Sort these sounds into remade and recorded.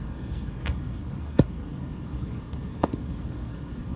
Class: remade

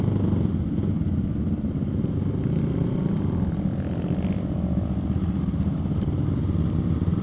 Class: recorded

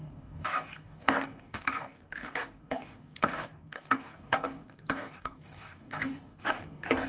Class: remade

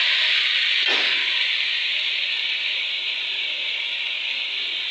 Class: recorded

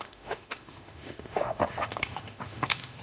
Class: remade